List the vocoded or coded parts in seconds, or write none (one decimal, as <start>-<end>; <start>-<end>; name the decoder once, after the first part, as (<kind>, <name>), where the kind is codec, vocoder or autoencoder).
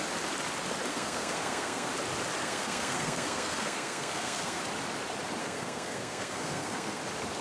0.9-1.9 (codec, SNAC); 2.4-4.6; 5.4-7.0